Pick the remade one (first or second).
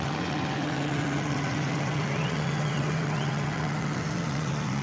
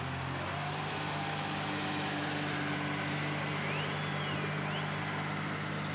first